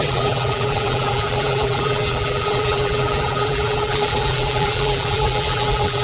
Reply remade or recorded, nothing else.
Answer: remade